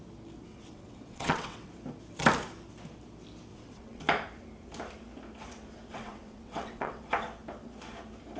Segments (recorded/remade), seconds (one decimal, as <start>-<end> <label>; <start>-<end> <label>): 0.0-0.5 recorded; 0.5-1.7 remade; 1.7-3.5 recorded; 3.5-4.0 remade; 4.0-5.9 recorded; 5.9-7.0 remade; 7.0-8.4 recorded